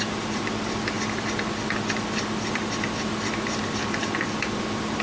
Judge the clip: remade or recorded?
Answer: remade